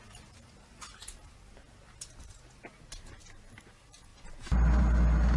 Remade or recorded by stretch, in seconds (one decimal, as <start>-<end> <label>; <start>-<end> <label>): 0.0-5.4 recorded